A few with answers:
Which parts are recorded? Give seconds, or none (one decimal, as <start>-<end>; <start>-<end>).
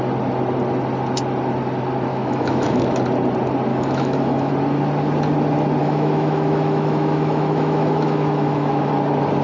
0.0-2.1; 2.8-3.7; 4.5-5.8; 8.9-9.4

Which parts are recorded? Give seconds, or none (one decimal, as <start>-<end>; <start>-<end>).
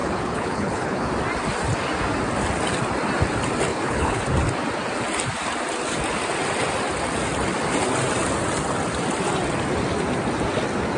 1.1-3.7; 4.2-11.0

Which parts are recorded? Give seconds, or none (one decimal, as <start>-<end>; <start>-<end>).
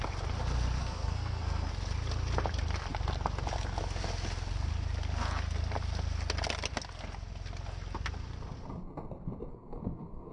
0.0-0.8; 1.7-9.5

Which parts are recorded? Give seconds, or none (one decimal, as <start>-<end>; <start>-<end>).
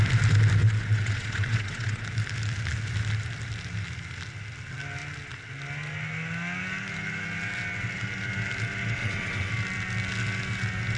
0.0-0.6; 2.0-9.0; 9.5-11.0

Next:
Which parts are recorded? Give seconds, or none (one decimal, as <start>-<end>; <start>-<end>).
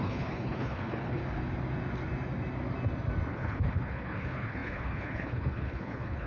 1.2-3.3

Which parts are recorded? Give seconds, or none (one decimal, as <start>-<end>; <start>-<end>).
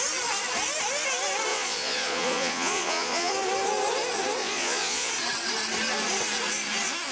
0.0-1.5; 3.3-4.4; 5.1-7.1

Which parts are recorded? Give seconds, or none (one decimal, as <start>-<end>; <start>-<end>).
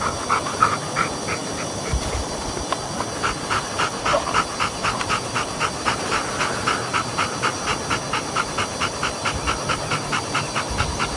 0.0-11.2